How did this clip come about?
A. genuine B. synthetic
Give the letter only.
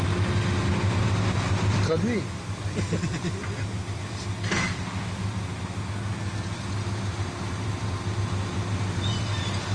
A